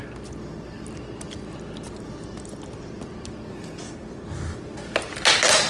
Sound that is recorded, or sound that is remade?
recorded